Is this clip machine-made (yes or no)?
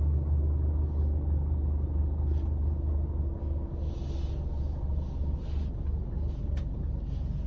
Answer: no